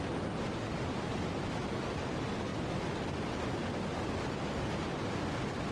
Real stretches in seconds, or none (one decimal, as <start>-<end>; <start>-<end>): 0.0-5.7